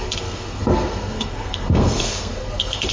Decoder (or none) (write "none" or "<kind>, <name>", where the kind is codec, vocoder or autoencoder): codec, SNAC